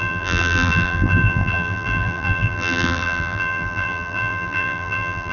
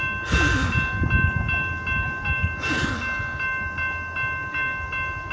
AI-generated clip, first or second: first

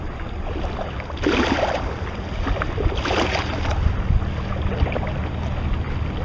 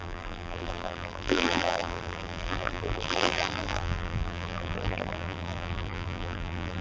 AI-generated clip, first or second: second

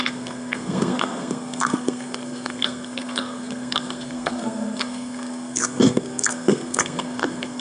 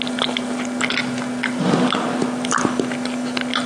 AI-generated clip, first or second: first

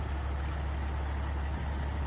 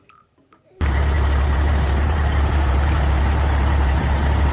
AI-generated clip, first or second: second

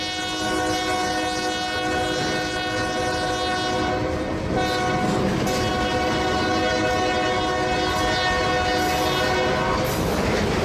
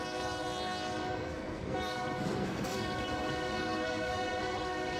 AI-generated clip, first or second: second